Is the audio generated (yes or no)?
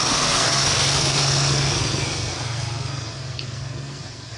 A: yes